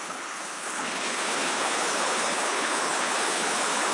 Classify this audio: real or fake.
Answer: fake